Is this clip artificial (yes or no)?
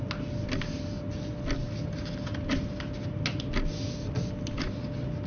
no